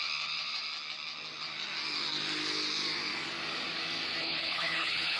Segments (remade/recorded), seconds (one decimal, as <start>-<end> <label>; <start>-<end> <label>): 0.0-4.2 recorded; 4.2-5.2 remade